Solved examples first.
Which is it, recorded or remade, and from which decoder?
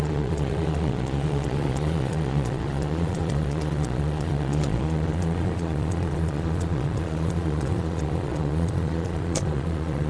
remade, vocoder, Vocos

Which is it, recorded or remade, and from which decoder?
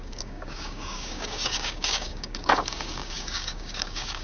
remade, codec, DAC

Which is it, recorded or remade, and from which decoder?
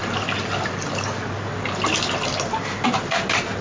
recorded